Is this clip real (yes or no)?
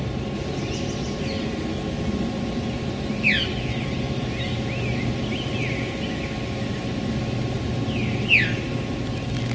yes